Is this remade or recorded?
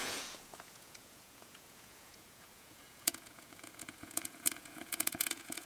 remade